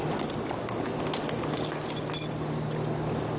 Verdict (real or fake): real